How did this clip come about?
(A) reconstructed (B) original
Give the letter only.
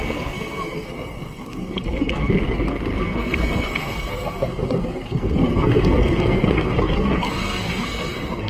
A